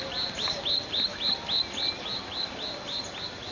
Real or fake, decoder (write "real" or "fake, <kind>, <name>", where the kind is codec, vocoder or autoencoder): real